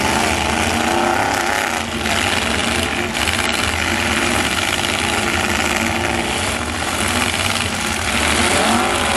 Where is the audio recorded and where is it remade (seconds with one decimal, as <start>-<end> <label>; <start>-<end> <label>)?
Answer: 0.0-9.2 recorded